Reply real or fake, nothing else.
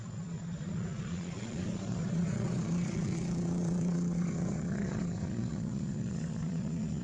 fake